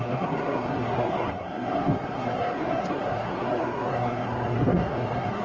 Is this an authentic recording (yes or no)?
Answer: no